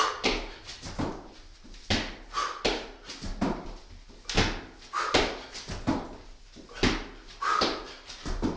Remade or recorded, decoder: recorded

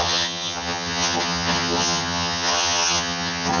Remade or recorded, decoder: remade, vocoder, HiFi-GAN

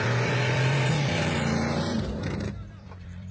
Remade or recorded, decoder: remade, vocoder, BigVGAN v2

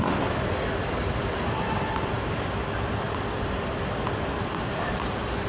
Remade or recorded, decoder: remade, vocoder, BigVGAN v2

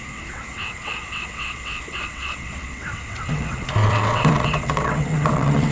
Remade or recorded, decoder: remade, vocoder, WaveNeXt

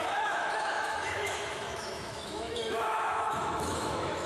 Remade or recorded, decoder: remade, autoencoder, DAC-VAE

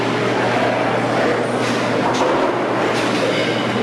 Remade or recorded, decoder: recorded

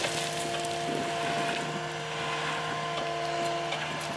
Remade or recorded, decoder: recorded